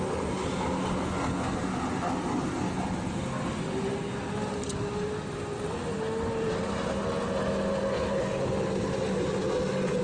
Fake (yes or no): no